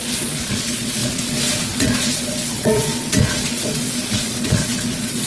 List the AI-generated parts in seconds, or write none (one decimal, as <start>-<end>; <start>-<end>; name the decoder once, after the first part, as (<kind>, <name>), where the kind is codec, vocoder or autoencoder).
0.0-5.3 (vocoder, Vocos)

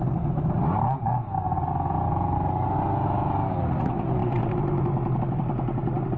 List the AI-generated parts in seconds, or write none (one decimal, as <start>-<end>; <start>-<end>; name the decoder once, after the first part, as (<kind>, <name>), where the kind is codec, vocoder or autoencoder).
none

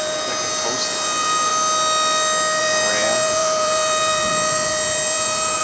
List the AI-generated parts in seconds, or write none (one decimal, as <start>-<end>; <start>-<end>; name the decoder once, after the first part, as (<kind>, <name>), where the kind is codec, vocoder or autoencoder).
0.0-1.5 (vocoder, Vocos); 2.6-5.6

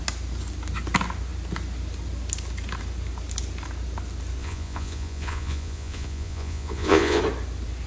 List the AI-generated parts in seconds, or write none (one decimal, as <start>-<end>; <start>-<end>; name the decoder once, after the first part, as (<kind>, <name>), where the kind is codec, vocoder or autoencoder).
4.4-7.2 (vocoder, Vocos)

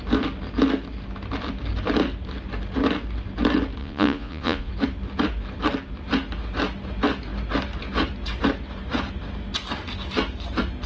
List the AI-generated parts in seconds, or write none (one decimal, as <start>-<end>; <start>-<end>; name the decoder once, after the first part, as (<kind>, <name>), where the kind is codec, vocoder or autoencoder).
3.8-4.7 (vocoder, Vocos)